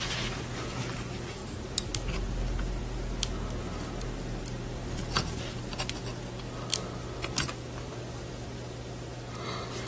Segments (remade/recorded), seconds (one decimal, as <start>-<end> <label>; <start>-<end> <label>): 0.0-9.9 recorded